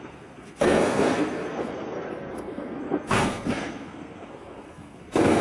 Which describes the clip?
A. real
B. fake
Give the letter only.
B